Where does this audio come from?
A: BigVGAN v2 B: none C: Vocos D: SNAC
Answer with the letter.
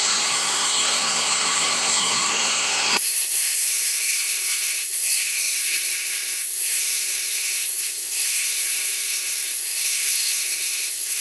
D